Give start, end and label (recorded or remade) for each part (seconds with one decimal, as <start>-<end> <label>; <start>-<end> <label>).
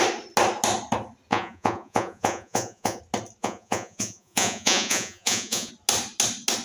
0.0-1.3 recorded; 1.3-3.0 remade; 3.0-3.4 recorded; 3.4-5.7 remade; 5.7-6.6 recorded